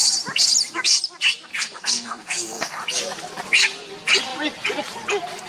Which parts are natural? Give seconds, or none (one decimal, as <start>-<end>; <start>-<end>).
0.0-1.5; 2.8-5.5